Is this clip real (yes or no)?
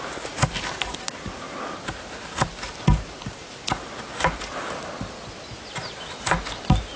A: yes